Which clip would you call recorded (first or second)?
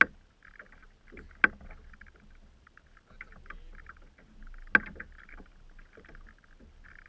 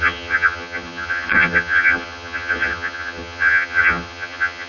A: first